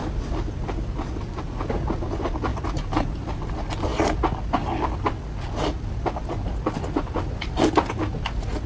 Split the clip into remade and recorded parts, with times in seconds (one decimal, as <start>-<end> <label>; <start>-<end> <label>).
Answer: 0.0-2.5 recorded; 2.5-3.5 remade; 3.5-8.7 recorded